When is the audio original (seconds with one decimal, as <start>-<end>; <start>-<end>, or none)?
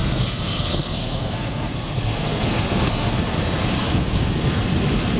3.1-3.8; 4.6-5.2